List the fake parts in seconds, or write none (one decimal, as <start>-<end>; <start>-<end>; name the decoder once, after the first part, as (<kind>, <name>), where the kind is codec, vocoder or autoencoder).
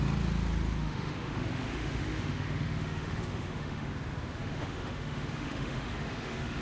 0.8-3.9 (autoencoder, DAC-VAE); 4.4-6.6